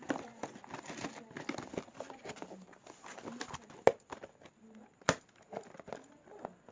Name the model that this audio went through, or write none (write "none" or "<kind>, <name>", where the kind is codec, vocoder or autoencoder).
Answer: none